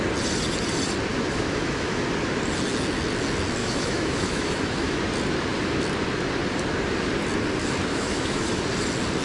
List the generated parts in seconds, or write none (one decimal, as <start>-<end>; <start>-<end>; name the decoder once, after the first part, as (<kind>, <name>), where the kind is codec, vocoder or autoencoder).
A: 1.1-2.0 (autoencoder, DAC-VAE); 3.6-5.0; 7.9-8.6